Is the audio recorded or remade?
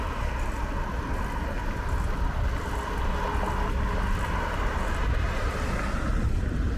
recorded